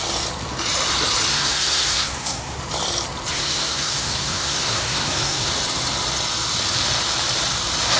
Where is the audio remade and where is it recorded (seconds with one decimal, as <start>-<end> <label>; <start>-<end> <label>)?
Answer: 0.0-1.3 recorded; 1.3-2.6 remade; 2.6-3.3 recorded; 3.3-5.5 remade; 5.5-8.0 recorded